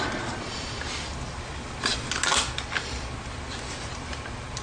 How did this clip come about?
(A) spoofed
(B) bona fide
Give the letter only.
B